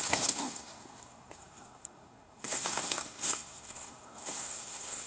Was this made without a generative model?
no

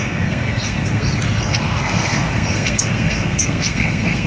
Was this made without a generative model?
no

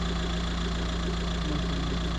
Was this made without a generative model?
yes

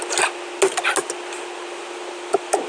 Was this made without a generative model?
yes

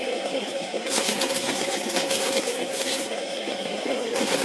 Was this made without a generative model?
no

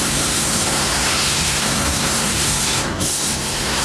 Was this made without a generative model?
no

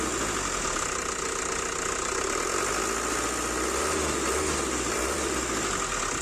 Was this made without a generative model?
yes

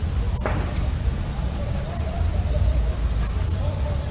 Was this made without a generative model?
yes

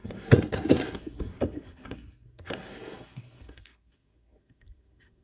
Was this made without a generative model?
no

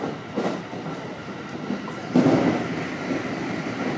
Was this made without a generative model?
yes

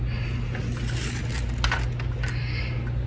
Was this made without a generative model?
yes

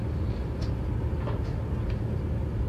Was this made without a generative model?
yes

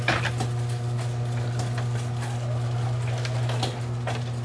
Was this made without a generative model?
yes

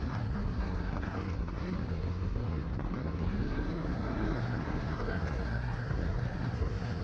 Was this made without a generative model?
no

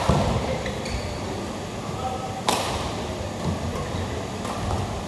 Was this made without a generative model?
yes